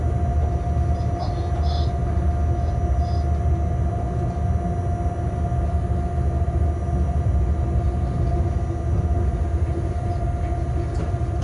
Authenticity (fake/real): real